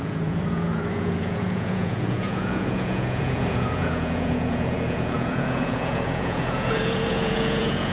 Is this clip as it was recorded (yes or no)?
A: no